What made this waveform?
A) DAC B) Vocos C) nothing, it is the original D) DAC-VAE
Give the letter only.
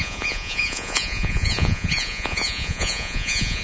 B